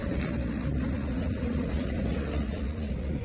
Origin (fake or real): fake